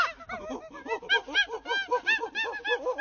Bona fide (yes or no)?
yes